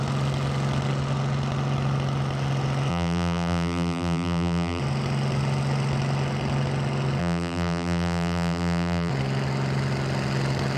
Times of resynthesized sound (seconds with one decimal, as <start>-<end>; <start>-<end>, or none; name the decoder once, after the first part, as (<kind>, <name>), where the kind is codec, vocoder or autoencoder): 2.9-4.8 (vocoder, BigVGAN v2); 7.2-9.1